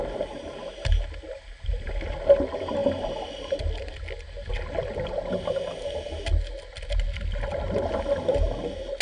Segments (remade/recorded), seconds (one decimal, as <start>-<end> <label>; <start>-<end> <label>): 0.0-9.0 recorded